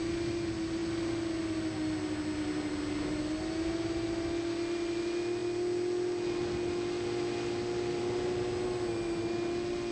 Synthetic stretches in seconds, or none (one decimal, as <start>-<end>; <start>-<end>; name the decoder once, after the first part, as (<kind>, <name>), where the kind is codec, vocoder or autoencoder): none